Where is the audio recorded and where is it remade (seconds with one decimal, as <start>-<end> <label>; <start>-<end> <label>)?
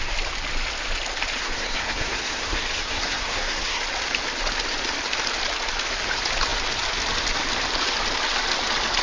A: 0.0-1.4 recorded; 1.4-3.8 remade; 3.8-9.0 recorded